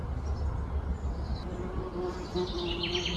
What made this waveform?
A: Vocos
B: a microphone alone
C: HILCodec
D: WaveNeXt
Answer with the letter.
B